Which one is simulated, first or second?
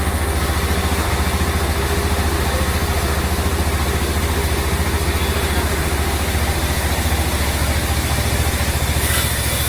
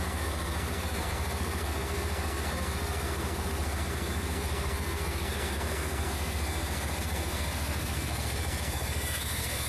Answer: second